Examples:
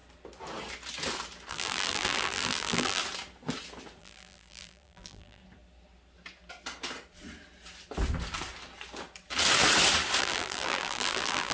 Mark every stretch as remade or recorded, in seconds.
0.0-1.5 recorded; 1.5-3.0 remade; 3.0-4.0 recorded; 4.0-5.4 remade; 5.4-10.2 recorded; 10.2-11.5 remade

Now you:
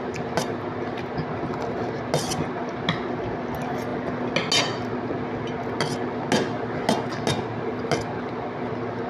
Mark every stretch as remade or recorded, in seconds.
0.0-9.1 recorded

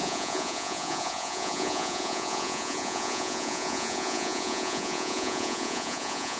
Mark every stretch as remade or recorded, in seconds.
0.0-6.4 remade